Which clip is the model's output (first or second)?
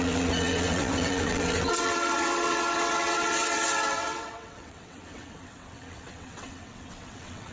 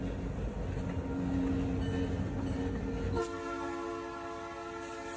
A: first